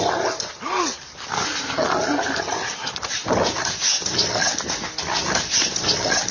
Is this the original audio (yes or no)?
yes